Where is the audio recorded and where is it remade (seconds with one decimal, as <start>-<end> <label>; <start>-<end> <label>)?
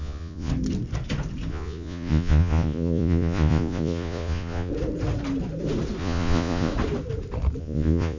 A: 0.0-0.5 remade; 0.5-1.5 recorded; 1.5-4.7 remade; 4.7-6.0 recorded; 6.0-6.7 remade; 6.7-7.6 recorded; 7.6-8.2 remade